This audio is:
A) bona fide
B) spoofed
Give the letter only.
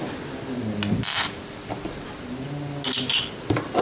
A